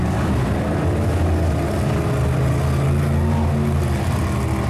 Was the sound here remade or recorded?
recorded